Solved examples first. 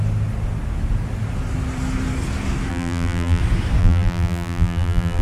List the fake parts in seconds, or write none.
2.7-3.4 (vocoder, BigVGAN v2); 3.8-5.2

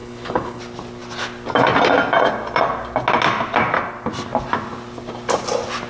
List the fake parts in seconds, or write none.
0.0-0.6 (codec, HILCodec)

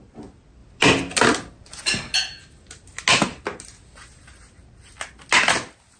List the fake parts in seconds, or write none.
none